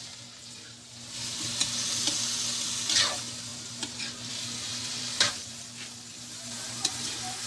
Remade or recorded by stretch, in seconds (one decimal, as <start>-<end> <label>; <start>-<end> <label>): 0.0-3.5 recorded; 3.5-4.3 remade; 4.3-4.7 recorded; 4.7-5.6 remade; 5.6-6.1 recorded; 6.1-7.0 remade; 7.0-7.5 recorded